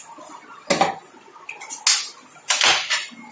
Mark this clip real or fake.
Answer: real